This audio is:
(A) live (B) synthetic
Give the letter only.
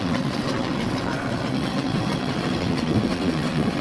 B